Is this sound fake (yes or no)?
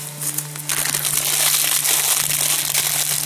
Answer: no